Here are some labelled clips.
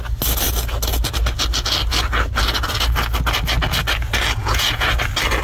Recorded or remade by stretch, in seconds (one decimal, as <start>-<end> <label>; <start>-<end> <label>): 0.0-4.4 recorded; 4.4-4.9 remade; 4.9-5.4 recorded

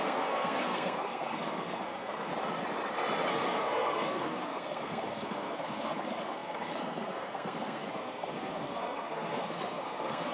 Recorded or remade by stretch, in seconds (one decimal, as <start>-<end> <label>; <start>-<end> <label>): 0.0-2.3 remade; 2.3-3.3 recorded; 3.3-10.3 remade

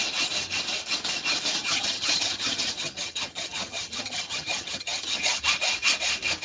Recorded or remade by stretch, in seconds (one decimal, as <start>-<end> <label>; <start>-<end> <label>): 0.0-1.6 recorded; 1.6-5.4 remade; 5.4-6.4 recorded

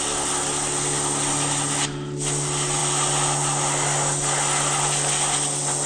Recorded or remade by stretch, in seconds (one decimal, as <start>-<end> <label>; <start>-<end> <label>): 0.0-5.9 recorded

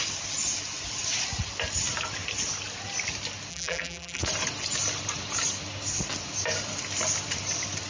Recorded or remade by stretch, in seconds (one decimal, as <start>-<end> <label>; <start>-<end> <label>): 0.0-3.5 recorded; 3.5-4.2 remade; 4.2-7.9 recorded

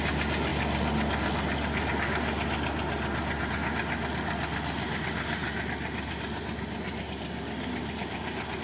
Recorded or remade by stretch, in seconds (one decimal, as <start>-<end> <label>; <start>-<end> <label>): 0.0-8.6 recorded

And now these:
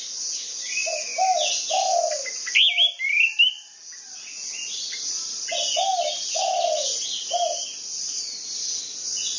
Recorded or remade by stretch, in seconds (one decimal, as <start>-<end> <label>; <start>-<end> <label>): 0.0-9.4 recorded